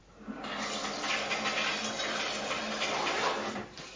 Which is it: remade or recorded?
recorded